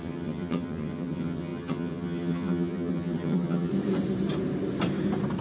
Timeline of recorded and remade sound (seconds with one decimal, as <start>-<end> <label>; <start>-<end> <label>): 0.0-3.7 remade; 3.7-5.4 recorded